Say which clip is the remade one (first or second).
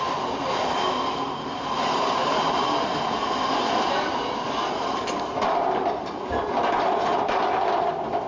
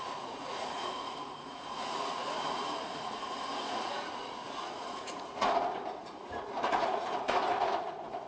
second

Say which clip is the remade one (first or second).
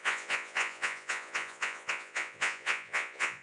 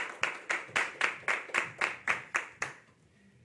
first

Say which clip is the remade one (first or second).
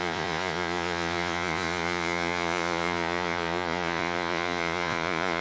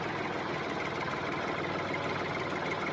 first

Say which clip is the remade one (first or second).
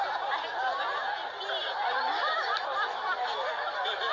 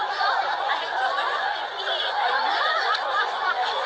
second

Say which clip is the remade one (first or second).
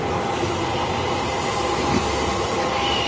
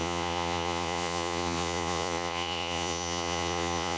second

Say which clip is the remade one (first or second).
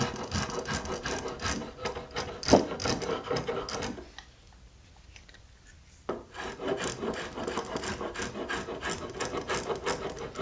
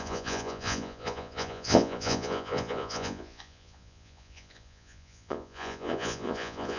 second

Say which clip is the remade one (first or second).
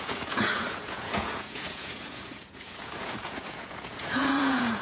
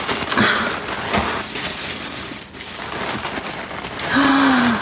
first